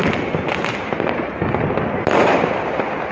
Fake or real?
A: real